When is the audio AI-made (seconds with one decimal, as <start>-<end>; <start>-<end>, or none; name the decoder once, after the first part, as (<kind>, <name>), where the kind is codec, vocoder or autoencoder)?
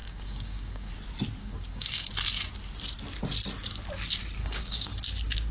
0.0-0.9 (codec, DAC); 1.4-2.1; 4.4-5.0